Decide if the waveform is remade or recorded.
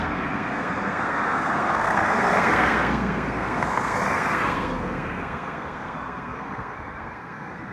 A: remade